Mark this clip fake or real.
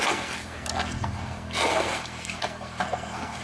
fake